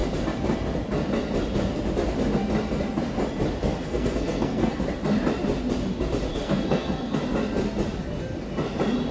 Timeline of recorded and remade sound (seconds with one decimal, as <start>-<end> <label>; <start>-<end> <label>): 0.0-3.6 recorded; 3.6-4.8 remade; 4.8-6.3 recorded; 6.3-7.2 remade; 7.2-9.1 recorded